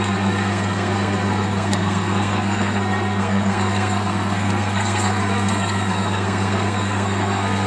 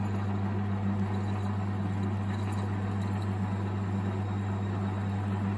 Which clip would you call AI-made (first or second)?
first